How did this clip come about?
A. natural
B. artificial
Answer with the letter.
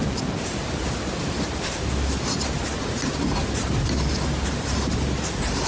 A